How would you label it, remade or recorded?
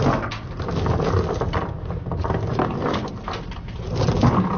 recorded